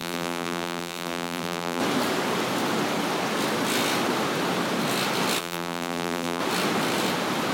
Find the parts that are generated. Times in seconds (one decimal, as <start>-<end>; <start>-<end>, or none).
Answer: 0.0-1.8; 5.4-6.4